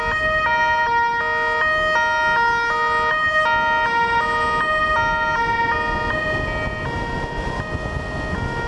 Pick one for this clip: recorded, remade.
recorded